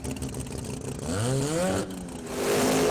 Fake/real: real